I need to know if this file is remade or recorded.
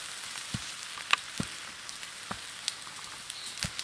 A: recorded